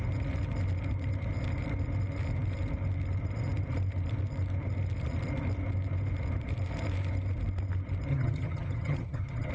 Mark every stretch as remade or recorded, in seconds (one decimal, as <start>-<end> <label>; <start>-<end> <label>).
0.0-8.1 recorded; 8.1-9.5 remade